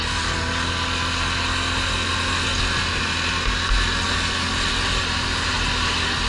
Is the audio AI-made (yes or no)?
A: no